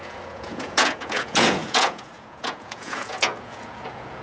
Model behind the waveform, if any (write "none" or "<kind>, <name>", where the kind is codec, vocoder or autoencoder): vocoder, Vocos